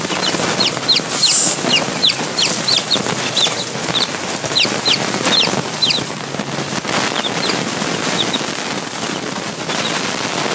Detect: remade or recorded recorded